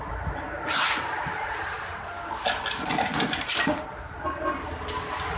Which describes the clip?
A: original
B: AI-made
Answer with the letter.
A